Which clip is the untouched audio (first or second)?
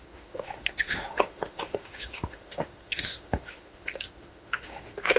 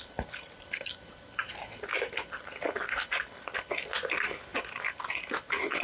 second